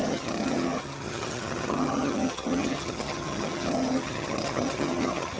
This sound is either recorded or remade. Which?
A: remade